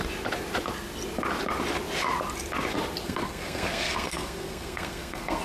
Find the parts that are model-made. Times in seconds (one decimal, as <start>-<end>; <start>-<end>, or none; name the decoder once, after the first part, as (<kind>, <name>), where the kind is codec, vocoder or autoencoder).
3.0-5.4 (codec, SNAC)